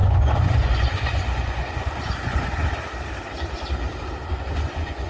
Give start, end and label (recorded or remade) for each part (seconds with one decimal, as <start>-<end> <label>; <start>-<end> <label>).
0.0-2.6 remade; 2.6-4.3 recorded; 4.3-5.1 remade